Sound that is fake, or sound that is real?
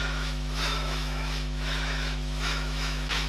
fake